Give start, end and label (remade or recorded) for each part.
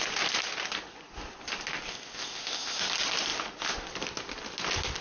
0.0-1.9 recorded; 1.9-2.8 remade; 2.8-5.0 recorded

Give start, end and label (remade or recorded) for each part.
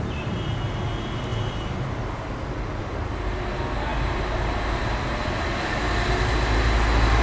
0.0-7.2 recorded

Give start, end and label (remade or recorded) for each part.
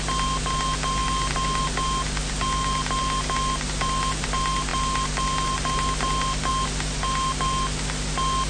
0.0-8.5 recorded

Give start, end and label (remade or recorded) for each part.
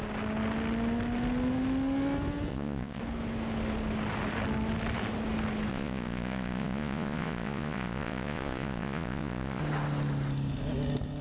0.0-2.5 recorded; 2.5-3.0 remade; 3.0-5.7 recorded; 5.7-9.6 remade; 9.6-11.2 recorded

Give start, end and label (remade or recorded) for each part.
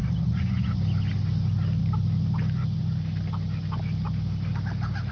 0.0-0.8 remade; 0.8-5.1 recorded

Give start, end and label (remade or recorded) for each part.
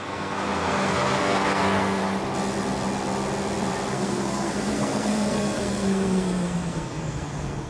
0.0-2.0 remade; 2.0-3.9 recorded; 3.9-7.7 remade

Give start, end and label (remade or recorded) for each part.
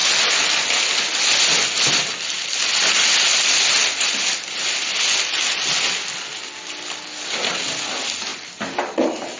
0.0-9.4 recorded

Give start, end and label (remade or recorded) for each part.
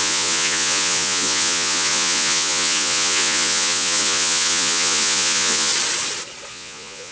0.0-5.7 remade; 5.7-6.5 recorded; 6.5-7.1 remade